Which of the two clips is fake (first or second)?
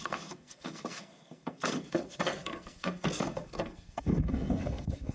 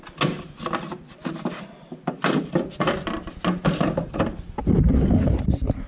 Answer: first